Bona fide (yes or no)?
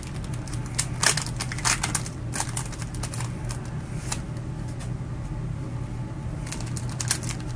yes